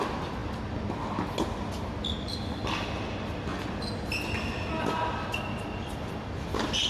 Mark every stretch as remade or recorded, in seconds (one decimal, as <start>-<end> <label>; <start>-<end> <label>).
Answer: 0.0-6.9 recorded